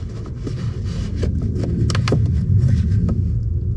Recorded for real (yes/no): yes